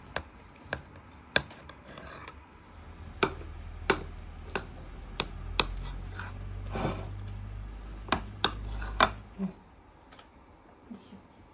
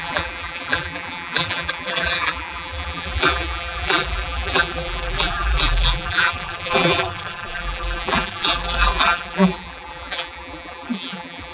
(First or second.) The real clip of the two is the first